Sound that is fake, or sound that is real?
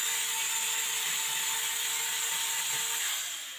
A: real